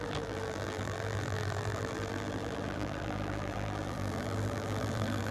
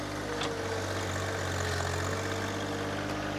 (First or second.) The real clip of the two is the second